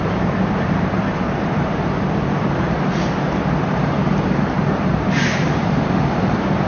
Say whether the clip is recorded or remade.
remade